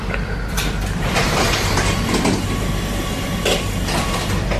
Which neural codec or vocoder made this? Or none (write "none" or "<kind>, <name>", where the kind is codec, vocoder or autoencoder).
none